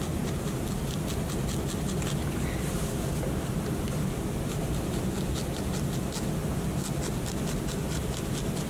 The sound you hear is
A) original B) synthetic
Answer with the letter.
A